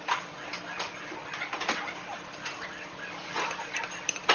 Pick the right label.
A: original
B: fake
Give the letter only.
A